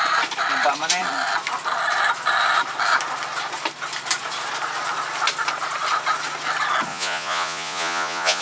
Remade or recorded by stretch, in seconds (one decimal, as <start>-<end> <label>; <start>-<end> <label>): 0.0-6.9 recorded; 6.9-8.4 remade